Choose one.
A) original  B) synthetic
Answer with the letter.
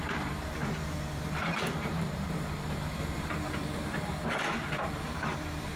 B